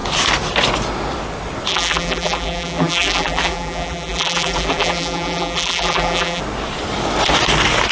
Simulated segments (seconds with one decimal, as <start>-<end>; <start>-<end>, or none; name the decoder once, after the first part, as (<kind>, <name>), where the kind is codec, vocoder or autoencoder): 1.7-6.4 (vocoder, BigVGAN v2)